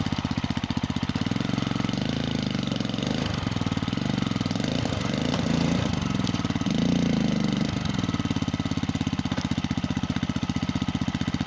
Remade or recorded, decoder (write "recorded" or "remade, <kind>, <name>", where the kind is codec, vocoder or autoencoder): recorded